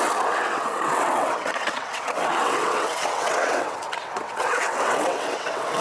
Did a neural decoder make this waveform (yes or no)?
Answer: yes